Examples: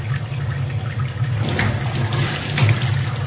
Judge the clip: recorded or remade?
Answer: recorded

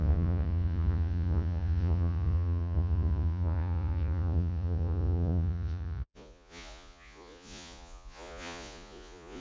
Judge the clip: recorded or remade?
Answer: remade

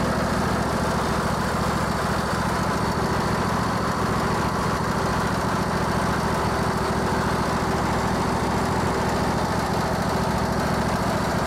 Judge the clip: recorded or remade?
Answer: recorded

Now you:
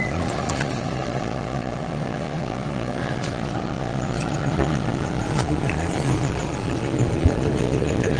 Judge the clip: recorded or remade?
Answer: remade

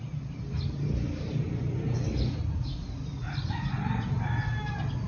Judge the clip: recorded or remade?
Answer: recorded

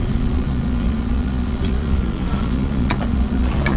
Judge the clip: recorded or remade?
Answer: remade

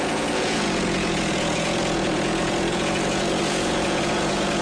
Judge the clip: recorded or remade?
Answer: remade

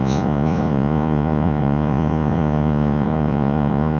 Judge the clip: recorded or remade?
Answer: remade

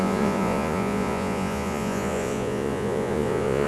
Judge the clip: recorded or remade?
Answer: remade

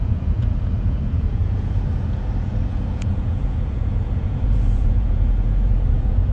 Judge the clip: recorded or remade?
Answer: remade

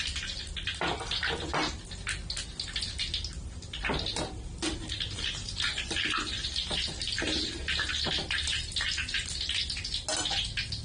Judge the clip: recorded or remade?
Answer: recorded